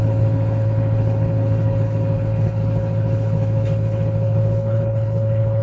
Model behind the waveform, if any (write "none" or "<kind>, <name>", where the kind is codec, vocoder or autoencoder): codec, HILCodec